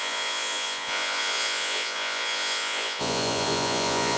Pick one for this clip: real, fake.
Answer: fake